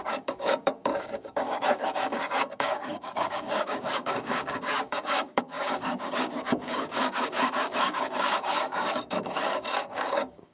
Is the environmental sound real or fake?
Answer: fake